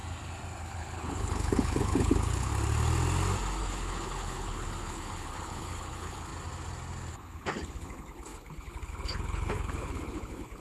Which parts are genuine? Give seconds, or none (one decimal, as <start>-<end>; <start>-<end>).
0.0-0.6; 2.5-3.6; 6.3-7.1